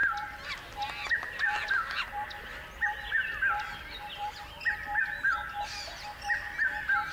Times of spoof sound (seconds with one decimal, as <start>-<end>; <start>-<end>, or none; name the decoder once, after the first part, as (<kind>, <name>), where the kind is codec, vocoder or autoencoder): none